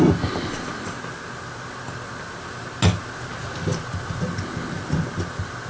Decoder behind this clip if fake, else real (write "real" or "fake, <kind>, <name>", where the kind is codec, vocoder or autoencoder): real